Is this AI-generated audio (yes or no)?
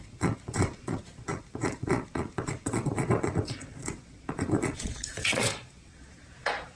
yes